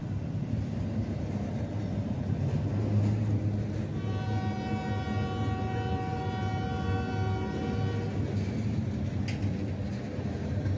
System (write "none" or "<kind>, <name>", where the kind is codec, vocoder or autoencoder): none